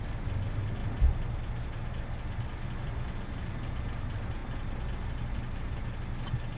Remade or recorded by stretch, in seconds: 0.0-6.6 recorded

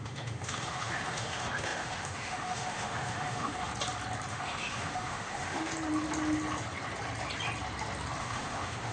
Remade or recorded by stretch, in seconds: 0.0-3.7 remade; 3.7-4.3 recorded; 4.3-5.7 remade; 5.7-8.2 recorded; 8.2-8.9 remade

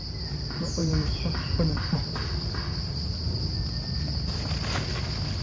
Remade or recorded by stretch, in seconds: 0.0-0.8 recorded; 0.8-3.4 remade; 3.4-5.4 recorded

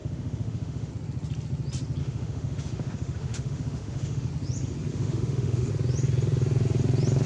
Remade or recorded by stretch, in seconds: 0.0-0.9 remade; 0.9-2.0 recorded; 2.0-4.3 remade; 4.3-4.9 recorded; 4.9-5.7 remade; 5.7-7.3 recorded

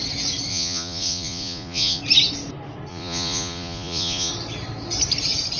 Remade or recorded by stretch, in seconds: 0.0-0.5 recorded; 0.5-2.0 remade; 2.0-2.9 recorded; 2.9-4.3 remade; 4.3-5.6 recorded

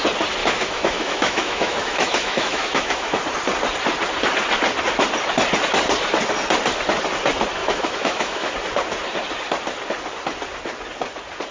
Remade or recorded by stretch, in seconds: 0.0-0.4 recorded; 0.4-3.2 remade; 3.2-7.6 recorded; 7.6-8.5 remade; 8.5-11.5 recorded

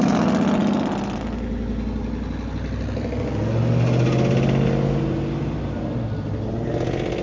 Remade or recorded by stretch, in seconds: 0.0-7.2 recorded